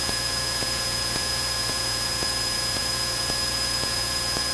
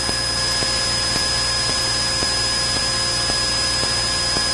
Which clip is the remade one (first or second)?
first